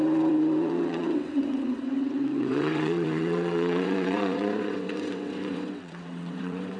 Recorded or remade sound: remade